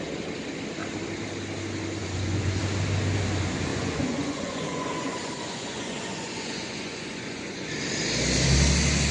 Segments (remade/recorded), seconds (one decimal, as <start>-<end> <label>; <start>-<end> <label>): 0.0-2.0 recorded; 2.0-2.6 remade; 2.6-3.7 recorded; 3.7-7.7 remade; 7.7-9.1 recorded